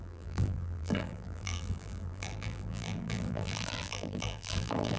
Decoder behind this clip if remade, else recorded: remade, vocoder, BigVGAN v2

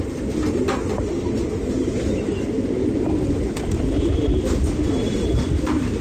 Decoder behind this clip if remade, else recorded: recorded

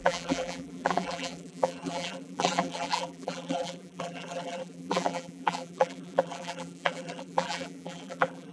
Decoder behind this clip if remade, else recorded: remade, vocoder, BigVGAN v2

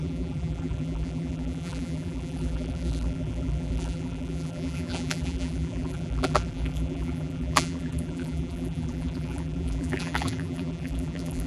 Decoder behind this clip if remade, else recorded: remade, vocoder, BigVGAN v2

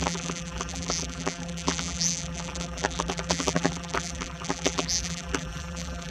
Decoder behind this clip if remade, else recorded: remade, vocoder, BigVGAN v2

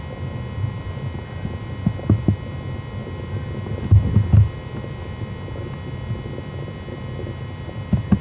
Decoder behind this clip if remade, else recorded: recorded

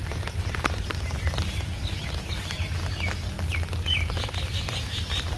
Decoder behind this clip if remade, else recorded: recorded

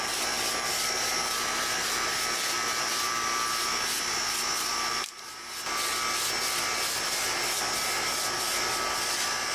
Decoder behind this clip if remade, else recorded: recorded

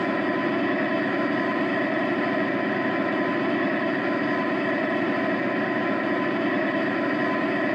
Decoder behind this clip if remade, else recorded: remade, vocoder, BigVGAN v2